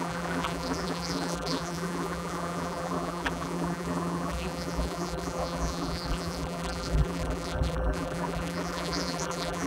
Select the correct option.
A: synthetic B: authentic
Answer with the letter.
A